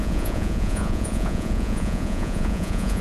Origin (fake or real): fake